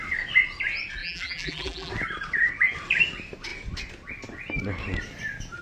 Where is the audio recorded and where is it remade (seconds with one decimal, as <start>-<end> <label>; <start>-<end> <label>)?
0.0-1.0 recorded; 1.0-1.9 remade; 1.9-5.6 recorded